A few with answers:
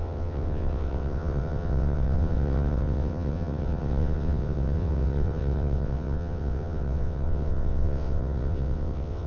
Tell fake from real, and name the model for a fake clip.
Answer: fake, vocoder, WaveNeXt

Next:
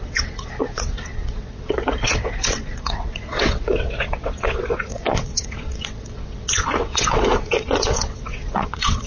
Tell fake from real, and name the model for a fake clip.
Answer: fake, vocoder, WaveNeXt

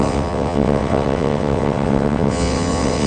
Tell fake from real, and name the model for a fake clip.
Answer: fake, vocoder, WaveNeXt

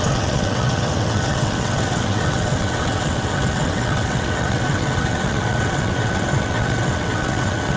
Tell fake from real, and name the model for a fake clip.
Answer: fake, vocoder, WaveNeXt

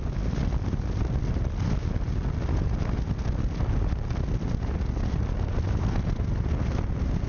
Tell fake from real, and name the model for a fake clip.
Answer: real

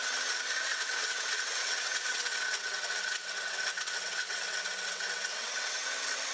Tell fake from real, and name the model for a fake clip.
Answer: fake, vocoder, WaveNeXt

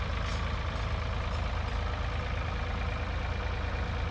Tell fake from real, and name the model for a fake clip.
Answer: real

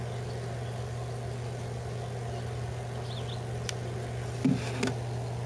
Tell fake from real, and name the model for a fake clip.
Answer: real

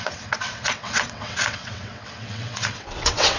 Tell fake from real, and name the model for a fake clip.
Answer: fake, vocoder, WaveNeXt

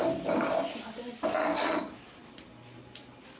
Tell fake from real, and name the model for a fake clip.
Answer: real